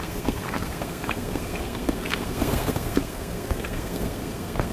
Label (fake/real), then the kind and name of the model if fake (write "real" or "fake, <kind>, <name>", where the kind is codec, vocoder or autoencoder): fake, codec, SNAC